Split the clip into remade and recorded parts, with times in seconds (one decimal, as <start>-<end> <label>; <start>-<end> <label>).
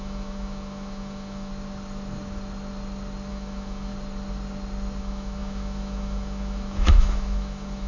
0.0-1.5 remade; 1.5-3.3 recorded; 3.3-3.9 remade; 3.9-5.0 recorded; 5.0-7.9 remade